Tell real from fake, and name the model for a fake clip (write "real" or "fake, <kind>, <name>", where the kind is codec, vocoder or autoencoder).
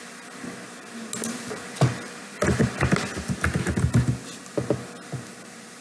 real